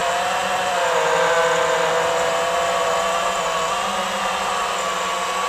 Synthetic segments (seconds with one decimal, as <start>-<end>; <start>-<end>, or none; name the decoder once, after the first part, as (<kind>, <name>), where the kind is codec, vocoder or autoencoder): none